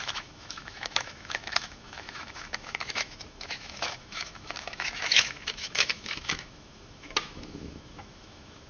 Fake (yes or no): yes